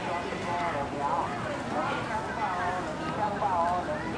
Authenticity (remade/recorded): recorded